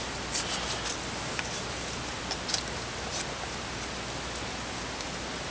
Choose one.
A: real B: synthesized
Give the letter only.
A